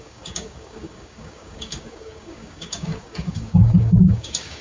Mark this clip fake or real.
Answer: fake